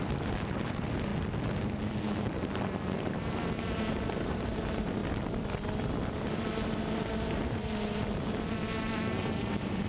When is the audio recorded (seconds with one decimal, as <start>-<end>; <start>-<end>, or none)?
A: 1.1-3.0; 5.0-6.0